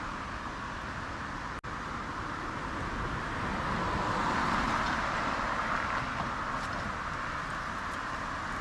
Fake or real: real